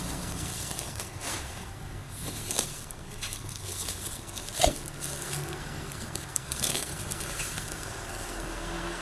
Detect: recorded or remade remade